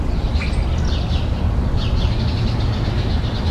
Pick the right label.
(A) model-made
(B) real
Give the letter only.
B